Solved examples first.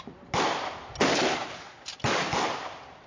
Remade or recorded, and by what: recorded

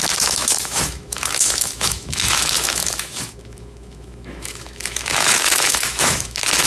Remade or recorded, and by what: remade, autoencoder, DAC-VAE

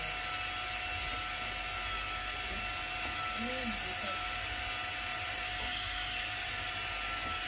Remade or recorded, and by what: recorded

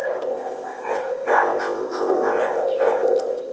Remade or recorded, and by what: remade, codec, ZipCodec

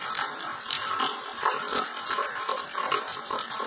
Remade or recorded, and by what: remade, vocoder, BigVGAN v2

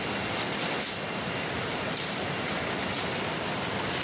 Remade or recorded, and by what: recorded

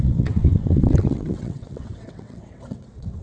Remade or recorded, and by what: remade, vocoder, WaveNeXt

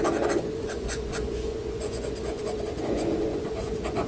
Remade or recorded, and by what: remade, vocoder, Vocos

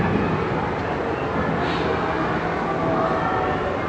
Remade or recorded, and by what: recorded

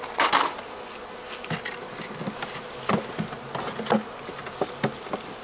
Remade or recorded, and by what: recorded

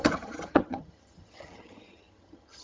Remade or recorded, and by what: remade, vocoder, HiFi-GAN